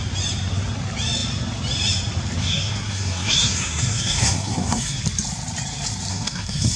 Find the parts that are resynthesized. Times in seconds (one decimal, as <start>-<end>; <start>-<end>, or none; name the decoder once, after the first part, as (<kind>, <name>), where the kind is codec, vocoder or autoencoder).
2.4-5.0 (codec, SNAC); 6.1-6.8

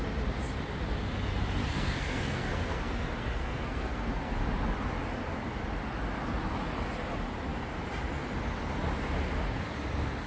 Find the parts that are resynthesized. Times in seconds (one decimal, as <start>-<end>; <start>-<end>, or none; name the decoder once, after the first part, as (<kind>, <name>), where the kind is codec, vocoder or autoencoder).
1.6-4.3 (codec, SNAC)